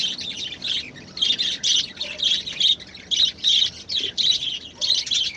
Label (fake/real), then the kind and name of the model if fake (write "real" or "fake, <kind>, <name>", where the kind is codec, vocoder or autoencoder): real